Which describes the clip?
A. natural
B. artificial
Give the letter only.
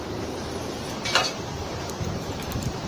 B